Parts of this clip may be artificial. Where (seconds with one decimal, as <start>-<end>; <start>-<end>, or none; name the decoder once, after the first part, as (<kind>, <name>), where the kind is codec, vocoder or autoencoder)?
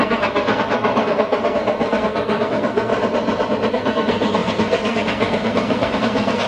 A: 0.0-2.9 (codec, SNAC); 3.7-6.5